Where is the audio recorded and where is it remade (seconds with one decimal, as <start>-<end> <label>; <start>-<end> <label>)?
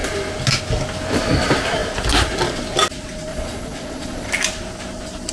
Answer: 0.0-3.3 recorded; 3.3-4.3 remade; 4.3-5.3 recorded